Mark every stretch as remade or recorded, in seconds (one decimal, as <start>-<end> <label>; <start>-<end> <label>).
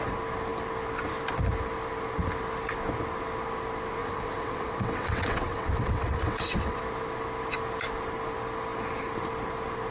0.0-4.0 recorded; 4.0-6.8 remade; 6.8-9.9 recorded